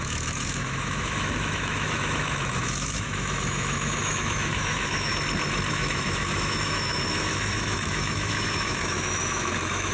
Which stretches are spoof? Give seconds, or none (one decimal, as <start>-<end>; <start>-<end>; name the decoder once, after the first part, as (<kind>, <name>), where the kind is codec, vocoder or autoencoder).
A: 0.0-5.1 (autoencoder, DAC-VAE); 5.7-9.9